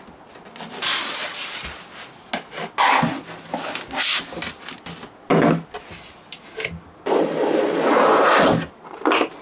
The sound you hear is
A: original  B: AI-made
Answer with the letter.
A